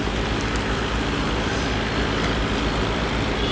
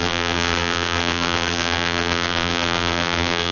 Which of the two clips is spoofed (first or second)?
second